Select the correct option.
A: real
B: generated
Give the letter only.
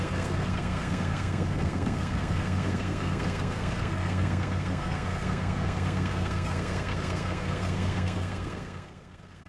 B